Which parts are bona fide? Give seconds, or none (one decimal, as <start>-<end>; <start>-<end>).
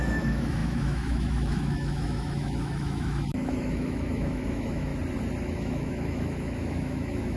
4.9-5.4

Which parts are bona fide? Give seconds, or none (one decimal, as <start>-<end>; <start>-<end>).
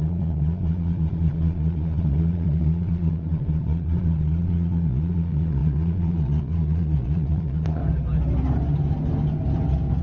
7.8-10.0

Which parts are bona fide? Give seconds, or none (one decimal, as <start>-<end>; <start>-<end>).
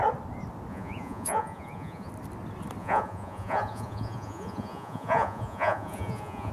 0.0-0.7; 2.1-2.8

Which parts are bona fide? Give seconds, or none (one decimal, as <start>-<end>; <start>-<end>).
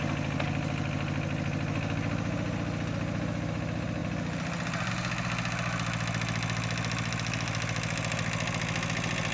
0.0-9.3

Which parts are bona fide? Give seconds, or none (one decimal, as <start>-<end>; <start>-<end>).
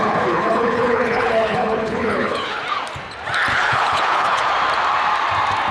2.6-3.5; 4.5-5.7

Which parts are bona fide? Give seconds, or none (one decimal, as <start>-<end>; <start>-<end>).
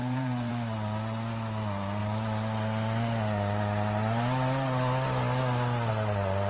0.5-6.5